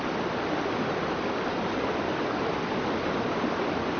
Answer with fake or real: real